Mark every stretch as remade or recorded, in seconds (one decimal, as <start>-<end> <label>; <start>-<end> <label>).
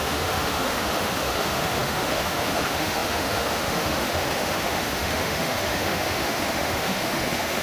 0.0-7.6 remade